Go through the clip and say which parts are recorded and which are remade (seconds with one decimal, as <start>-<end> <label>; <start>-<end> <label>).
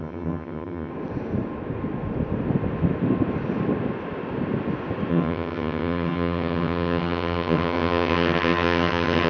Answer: 0.0-0.9 remade; 0.9-5.1 recorded; 5.1-9.3 remade